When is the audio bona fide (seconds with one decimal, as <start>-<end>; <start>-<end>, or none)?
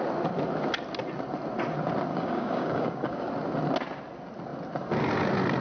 0.0-2.1; 3.3-5.6